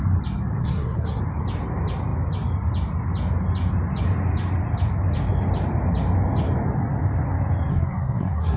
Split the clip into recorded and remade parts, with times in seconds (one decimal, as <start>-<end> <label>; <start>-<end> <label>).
0.0-0.6 recorded; 0.6-1.2 remade; 1.2-7.7 recorded; 7.7-8.6 remade